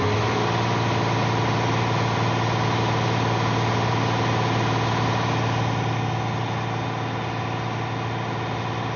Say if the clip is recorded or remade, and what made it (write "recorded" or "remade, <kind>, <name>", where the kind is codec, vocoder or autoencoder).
recorded